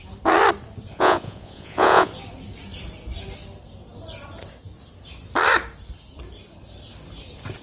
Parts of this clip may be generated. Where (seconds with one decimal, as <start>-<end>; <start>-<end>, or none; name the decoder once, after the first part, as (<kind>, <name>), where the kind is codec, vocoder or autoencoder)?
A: 0.9-2.1 (vocoder, Vocos)